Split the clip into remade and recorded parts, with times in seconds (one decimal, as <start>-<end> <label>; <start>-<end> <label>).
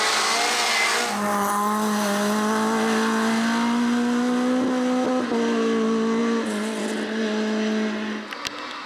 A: 0.0-8.9 recorded